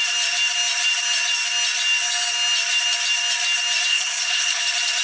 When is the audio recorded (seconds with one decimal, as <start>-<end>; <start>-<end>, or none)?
0.0-3.9; 4.6-5.0